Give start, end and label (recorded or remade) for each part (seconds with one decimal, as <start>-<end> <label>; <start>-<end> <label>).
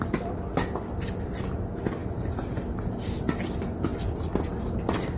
0.0-5.2 recorded